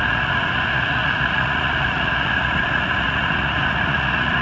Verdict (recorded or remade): remade